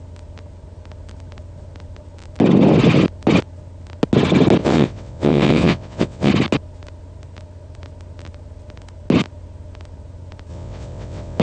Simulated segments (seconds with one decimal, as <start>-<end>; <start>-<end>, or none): 4.6-6.3; 10.5-11.4